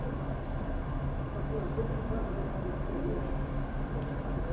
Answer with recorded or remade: recorded